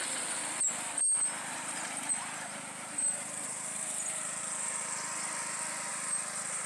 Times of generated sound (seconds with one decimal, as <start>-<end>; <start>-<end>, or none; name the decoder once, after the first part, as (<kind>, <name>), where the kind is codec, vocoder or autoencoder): 1.4-4.4 (vocoder, BigVGAN v2); 5.9-6.7